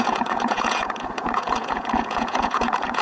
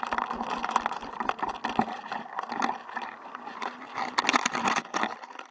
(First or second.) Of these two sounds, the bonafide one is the second